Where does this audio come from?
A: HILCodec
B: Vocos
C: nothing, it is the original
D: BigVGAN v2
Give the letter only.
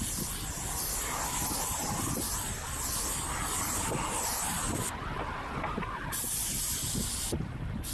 C